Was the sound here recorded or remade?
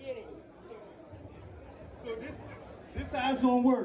recorded